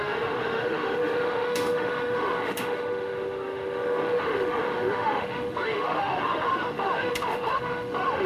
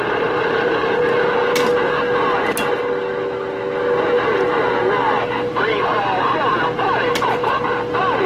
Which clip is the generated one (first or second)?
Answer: first